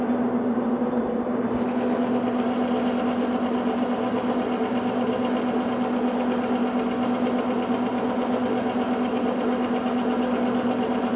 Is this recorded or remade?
recorded